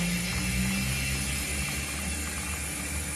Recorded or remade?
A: recorded